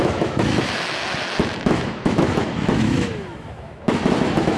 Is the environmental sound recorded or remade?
remade